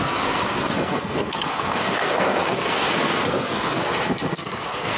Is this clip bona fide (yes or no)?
no